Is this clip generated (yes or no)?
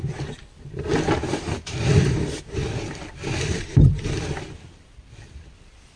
yes